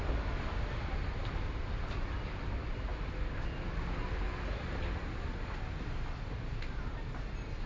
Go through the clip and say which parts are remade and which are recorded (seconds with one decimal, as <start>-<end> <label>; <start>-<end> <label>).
0.0-7.7 recorded